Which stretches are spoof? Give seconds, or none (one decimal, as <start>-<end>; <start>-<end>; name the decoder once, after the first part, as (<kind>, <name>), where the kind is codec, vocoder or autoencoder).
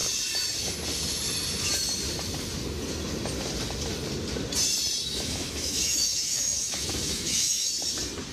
5.0-7.7 (autoencoder, DAC-VAE)